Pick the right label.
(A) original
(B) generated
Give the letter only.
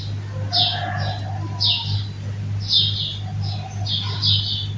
A